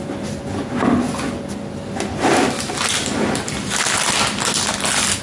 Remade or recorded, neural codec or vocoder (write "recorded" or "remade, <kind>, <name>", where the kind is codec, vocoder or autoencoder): recorded